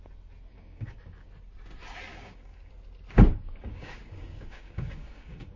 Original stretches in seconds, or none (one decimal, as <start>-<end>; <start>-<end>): 0.0-0.5; 1.3-2.1; 2.7-3.3